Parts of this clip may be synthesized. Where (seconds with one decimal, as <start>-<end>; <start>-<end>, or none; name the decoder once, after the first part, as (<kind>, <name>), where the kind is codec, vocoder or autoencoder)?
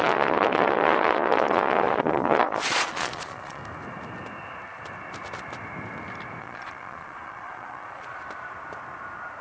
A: 0.0-3.6 (vocoder, Vocos); 6.4-8.2